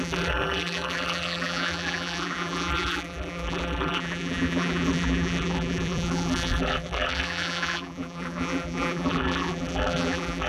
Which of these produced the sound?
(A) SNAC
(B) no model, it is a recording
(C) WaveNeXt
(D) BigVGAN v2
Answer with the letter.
D